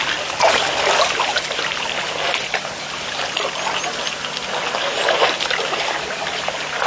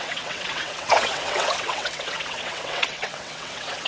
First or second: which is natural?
first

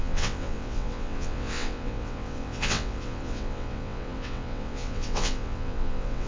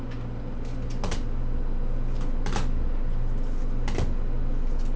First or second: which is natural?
second